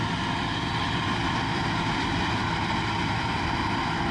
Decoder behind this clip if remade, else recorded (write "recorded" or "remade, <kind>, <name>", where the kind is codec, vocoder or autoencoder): remade, vocoder, BigVGAN v2